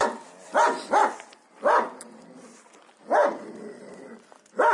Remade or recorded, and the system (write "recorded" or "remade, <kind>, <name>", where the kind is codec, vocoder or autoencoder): recorded